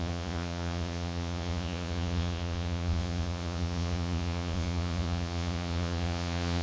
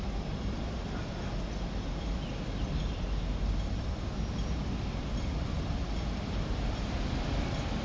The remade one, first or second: first